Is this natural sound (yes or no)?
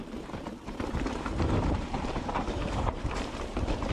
no